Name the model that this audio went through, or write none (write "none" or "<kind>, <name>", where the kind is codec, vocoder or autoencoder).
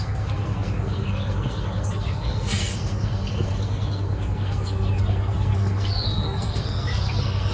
codec, SNAC